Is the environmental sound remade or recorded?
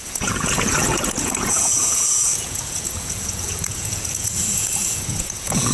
remade